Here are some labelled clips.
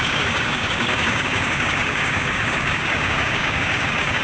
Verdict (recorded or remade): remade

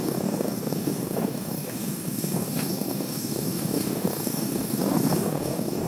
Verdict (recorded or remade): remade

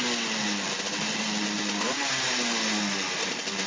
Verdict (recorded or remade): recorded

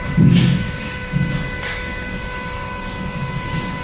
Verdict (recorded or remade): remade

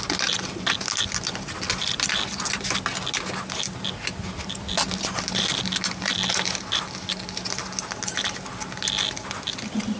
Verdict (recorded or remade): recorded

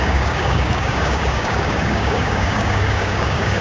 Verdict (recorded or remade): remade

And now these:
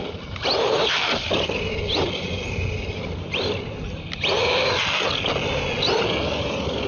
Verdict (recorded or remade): recorded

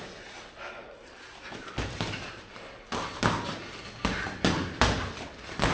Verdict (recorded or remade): recorded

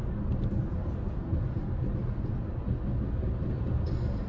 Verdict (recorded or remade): recorded